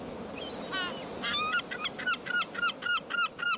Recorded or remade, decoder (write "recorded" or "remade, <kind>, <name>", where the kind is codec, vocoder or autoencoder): recorded